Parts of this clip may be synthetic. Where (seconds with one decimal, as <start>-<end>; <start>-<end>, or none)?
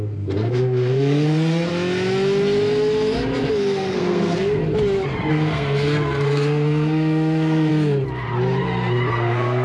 0.0-1.7; 3.5-4.6; 5.3-7.7; 9.1-9.6